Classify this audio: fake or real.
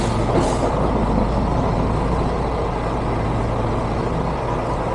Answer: real